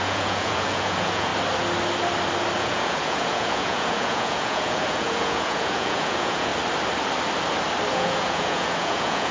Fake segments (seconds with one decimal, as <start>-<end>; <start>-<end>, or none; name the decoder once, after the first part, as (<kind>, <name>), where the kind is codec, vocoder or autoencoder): 0.0-1.3 (vocoder, Vocos); 2.6-6.5; 7.9-9.3